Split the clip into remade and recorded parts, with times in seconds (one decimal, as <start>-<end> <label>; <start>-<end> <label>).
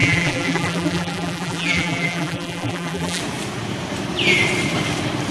0.0-3.2 remade; 3.2-5.3 recorded